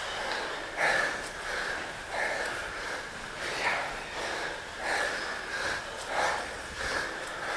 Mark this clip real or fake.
real